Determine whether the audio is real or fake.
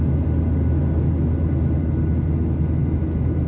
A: real